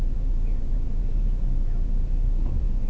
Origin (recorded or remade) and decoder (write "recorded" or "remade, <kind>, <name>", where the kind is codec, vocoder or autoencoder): remade, vocoder, Vocos